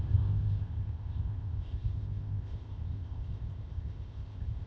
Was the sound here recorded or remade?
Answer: remade